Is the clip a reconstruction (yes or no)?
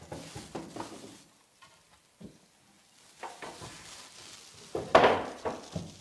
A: no